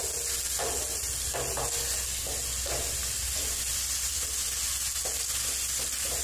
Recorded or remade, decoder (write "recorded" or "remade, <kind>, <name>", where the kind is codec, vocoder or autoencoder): recorded